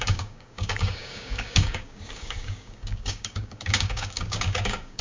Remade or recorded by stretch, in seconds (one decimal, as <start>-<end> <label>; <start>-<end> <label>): 0.0-5.0 remade